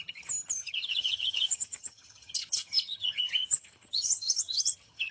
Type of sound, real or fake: fake